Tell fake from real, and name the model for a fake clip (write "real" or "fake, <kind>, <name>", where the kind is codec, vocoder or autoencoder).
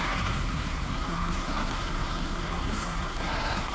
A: fake, codec, SNAC